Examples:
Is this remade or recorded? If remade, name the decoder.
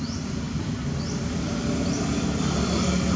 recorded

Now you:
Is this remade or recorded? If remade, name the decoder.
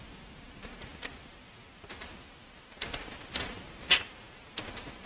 recorded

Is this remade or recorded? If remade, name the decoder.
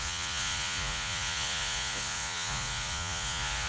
remade, vocoder, Vocos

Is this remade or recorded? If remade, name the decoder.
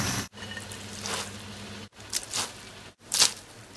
recorded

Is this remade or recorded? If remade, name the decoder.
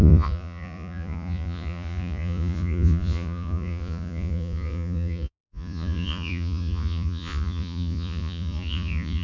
remade, vocoder, Vocos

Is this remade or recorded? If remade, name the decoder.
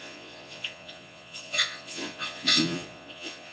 remade, vocoder, Vocos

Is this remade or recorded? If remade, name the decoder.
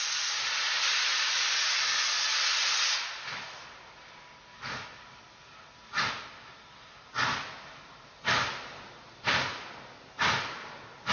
recorded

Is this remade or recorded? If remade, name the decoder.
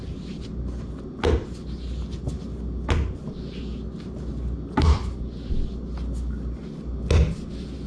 recorded